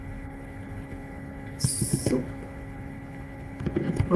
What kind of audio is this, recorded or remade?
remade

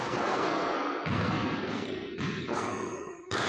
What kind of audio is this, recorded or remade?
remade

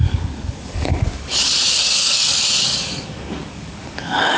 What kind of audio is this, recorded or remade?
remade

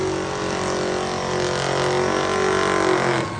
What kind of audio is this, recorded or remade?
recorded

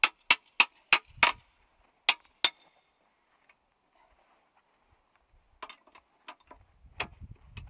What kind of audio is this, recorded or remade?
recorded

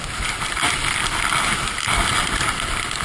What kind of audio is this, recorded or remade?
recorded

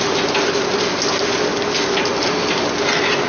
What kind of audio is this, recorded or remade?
recorded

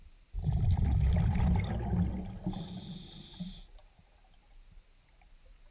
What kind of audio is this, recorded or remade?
recorded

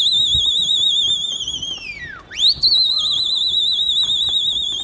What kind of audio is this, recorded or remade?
recorded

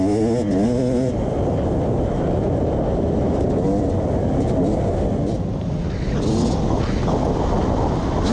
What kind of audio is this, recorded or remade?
recorded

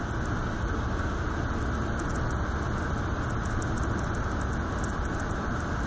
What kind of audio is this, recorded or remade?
recorded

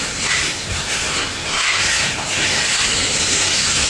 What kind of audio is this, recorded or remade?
remade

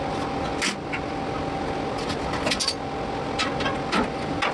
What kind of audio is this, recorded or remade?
recorded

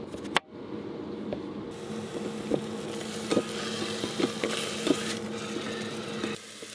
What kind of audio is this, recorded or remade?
recorded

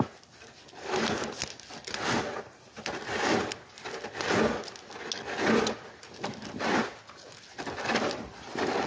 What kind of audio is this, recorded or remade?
recorded